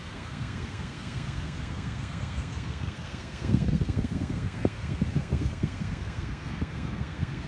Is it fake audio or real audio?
fake